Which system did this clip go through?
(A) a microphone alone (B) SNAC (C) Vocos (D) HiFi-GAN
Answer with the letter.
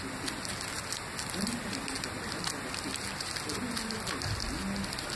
A